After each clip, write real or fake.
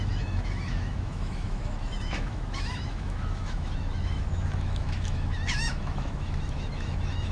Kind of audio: fake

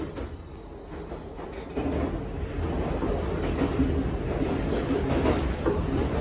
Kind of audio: real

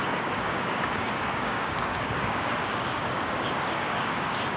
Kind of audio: fake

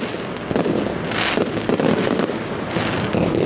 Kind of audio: real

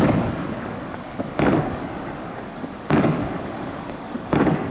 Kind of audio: fake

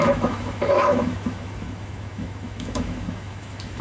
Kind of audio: fake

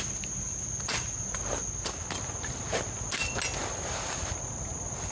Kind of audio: real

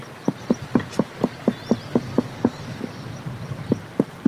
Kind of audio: real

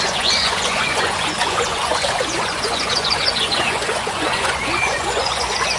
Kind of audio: fake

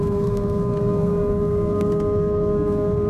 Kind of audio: fake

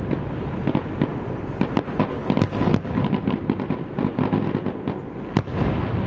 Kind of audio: real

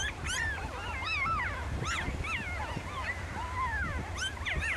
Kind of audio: real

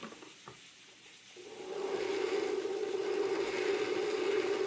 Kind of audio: real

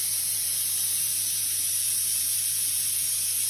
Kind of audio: fake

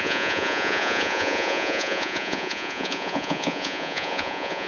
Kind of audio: fake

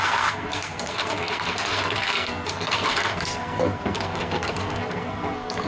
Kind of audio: fake